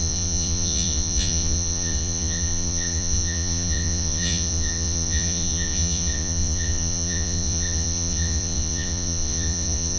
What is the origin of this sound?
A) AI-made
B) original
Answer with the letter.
A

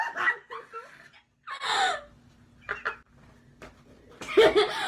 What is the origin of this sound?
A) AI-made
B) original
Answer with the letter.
B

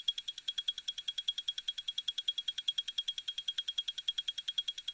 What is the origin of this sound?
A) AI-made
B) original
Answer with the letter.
B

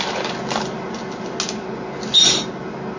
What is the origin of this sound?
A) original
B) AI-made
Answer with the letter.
A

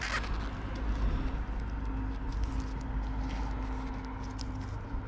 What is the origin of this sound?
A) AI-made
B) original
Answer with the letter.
B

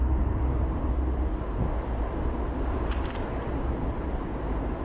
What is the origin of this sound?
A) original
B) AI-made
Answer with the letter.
A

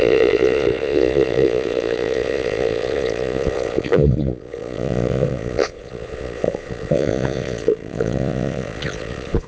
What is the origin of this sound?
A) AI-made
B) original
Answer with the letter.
A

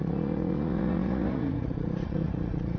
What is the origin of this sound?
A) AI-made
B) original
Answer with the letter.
A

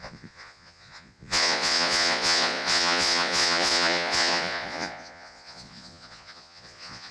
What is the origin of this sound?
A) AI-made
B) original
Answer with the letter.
A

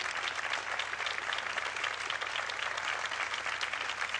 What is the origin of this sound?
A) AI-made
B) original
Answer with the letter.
B